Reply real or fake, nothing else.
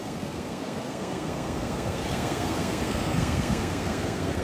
fake